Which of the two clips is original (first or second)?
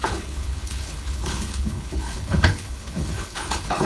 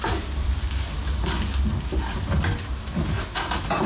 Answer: second